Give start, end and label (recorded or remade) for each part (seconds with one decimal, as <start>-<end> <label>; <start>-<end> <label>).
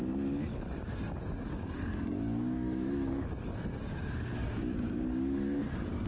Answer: 0.0-0.5 recorded; 0.5-3.2 remade; 3.2-3.7 recorded; 3.7-6.1 remade